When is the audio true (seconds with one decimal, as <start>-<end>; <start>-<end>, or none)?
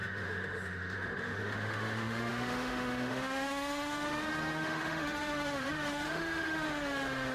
none